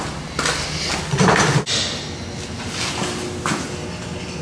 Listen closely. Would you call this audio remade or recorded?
recorded